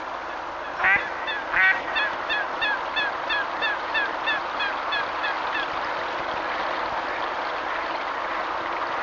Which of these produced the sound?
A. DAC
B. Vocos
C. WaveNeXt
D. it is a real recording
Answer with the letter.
D